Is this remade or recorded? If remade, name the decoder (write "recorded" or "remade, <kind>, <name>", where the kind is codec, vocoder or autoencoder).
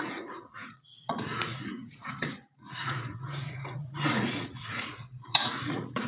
remade, vocoder, Vocos